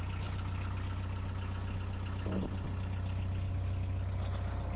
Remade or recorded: recorded